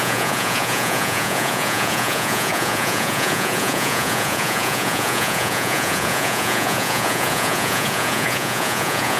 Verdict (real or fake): fake